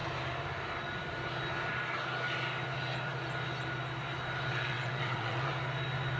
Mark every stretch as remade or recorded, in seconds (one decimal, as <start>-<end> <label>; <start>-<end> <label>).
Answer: 0.0-4.5 recorded; 4.5-5.5 remade; 5.5-6.2 recorded

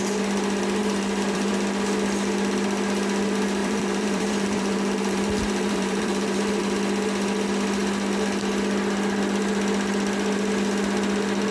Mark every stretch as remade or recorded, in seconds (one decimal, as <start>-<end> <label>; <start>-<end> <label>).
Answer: 0.0-0.8 recorded; 0.8-1.5 remade; 1.5-3.6 recorded; 3.6-6.6 remade; 6.6-11.5 recorded

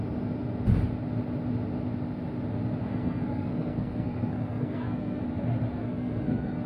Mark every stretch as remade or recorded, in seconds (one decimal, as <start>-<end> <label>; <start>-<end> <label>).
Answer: 0.0-2.8 recorded; 2.8-5.2 remade; 5.2-5.8 recorded; 5.8-6.7 remade